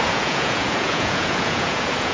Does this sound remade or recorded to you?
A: remade